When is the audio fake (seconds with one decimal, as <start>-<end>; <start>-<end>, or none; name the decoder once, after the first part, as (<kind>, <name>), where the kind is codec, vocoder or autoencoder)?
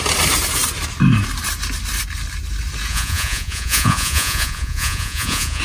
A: 2.9-5.6 (vocoder, Vocos)